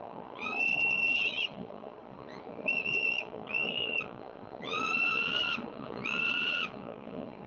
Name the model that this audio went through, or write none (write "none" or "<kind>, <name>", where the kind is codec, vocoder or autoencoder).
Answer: vocoder, Vocos